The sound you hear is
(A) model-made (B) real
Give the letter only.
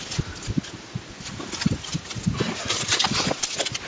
B